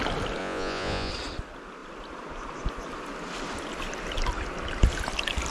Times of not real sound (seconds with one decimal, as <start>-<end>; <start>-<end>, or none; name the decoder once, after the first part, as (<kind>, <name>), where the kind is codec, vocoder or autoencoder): 0.4-1.1 (vocoder, Vocos)